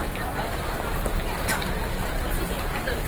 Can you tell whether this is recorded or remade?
remade